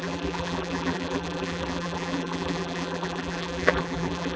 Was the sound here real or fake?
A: fake